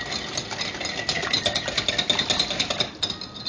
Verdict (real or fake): real